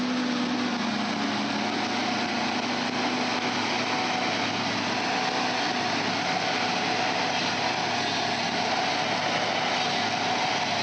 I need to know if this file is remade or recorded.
recorded